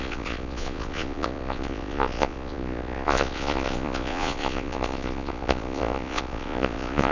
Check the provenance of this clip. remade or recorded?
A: remade